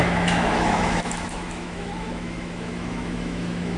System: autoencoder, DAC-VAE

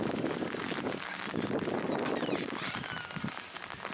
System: none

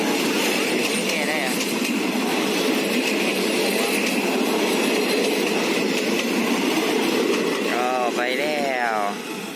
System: none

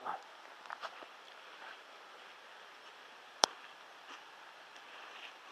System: vocoder, BigVGAN v2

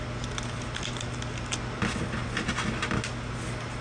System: none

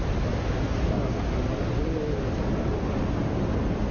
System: none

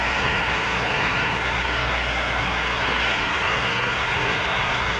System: codec, SNAC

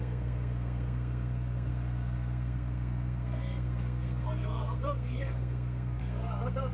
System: codec, SNAC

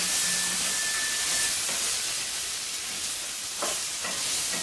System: none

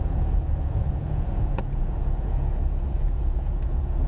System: vocoder, Vocos